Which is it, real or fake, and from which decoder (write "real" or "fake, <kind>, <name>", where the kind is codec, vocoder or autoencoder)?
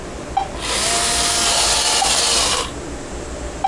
real